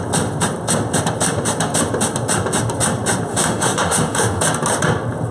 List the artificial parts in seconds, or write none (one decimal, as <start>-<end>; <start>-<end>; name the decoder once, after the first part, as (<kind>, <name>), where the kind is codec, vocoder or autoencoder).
3.3-4.4 (autoencoder, DAC-VAE)